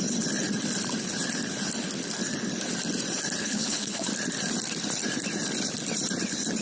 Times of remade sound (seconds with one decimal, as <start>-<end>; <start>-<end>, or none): 3.4-4.1